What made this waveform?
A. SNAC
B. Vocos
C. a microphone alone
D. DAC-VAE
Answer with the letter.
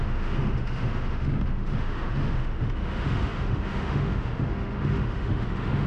D